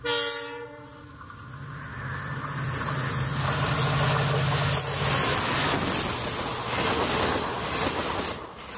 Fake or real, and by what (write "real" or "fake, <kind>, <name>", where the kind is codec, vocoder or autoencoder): real